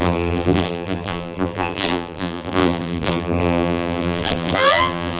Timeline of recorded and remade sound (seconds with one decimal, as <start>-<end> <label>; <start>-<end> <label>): 0.0-5.2 remade